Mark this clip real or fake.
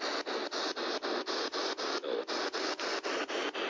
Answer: real